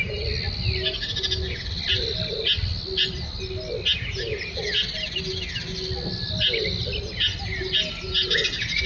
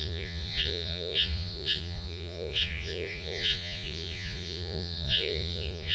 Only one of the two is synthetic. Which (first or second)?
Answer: second